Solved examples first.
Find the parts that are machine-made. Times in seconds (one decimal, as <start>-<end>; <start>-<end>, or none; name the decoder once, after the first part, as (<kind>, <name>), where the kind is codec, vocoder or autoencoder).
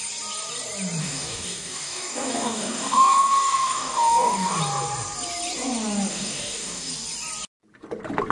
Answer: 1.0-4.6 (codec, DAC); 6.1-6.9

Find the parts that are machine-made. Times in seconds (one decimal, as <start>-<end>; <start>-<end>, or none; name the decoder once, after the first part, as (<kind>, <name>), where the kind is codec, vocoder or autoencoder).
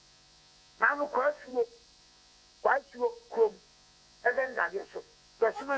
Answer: 0.0-1.5 (vocoder, Vocos); 2.0-2.5; 3.3-5.8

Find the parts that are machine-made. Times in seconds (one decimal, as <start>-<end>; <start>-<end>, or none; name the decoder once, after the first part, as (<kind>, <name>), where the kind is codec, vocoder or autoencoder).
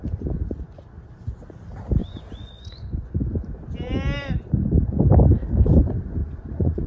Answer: 2.0-3.2 (vocoder, Vocos); 6.2-6.9